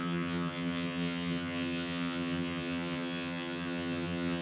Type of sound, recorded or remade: remade